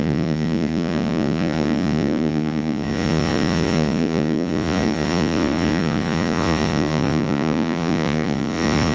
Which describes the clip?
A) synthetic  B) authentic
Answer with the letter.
A